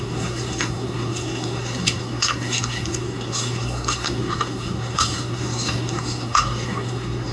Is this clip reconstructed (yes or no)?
yes